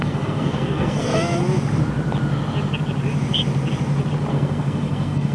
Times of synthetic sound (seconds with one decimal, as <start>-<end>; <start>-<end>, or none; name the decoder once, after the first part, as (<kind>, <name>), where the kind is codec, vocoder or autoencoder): 0.0-1.1 (codec, SNAC); 4.3-5.3